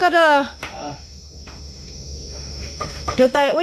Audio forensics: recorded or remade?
remade